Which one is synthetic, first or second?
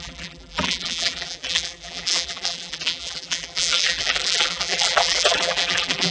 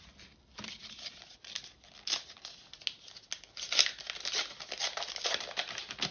first